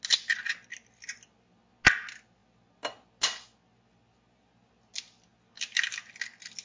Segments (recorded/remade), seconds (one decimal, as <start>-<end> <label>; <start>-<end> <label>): 0.0-6.6 recorded